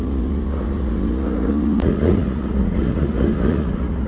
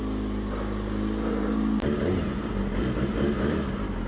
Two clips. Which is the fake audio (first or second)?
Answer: first